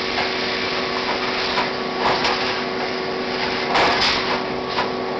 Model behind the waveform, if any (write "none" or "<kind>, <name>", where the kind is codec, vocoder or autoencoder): none